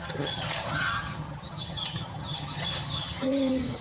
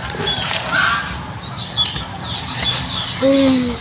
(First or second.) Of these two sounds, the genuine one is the second